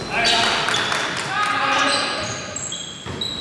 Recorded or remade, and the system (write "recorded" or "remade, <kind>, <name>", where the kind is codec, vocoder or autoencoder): recorded